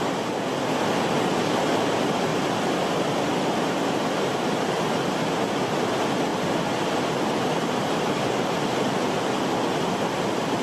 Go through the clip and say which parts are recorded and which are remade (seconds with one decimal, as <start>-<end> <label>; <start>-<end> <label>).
0.0-2.3 recorded; 2.3-5.3 remade; 5.3-6.3 recorded; 6.3-8.8 remade; 8.8-10.6 recorded